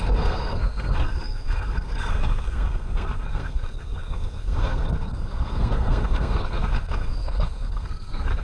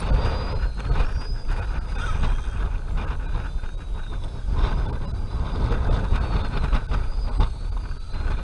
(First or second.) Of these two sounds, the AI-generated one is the first